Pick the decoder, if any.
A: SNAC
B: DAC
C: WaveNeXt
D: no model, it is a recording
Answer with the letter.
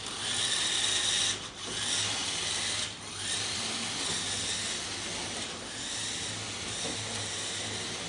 D